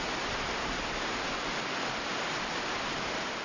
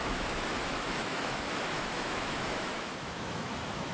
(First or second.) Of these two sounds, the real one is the first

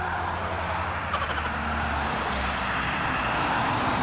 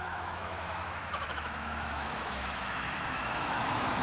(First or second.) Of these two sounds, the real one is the first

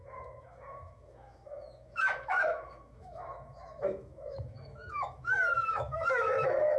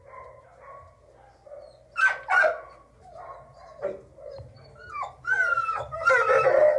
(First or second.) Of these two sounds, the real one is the second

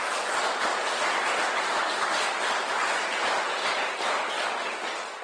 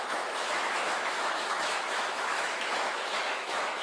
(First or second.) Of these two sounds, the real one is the first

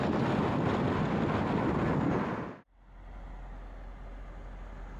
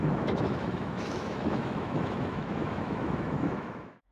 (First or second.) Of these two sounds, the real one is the first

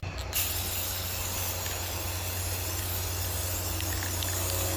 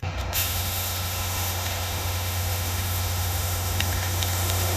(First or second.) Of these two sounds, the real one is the first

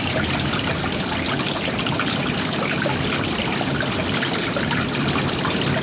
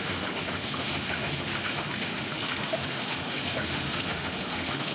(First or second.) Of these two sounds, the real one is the first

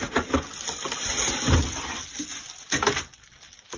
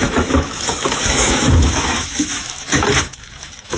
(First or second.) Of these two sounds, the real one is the first